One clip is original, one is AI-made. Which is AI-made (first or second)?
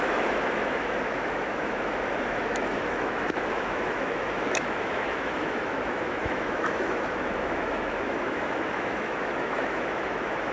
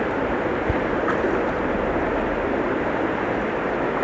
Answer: first